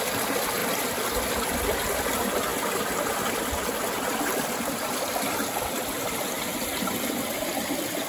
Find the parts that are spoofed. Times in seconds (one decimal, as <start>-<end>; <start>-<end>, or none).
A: none